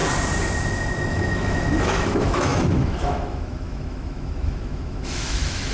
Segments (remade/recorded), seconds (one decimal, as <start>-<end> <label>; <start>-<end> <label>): 0.0-1.1 recorded; 1.1-5.7 remade